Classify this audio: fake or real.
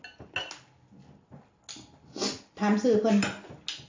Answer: real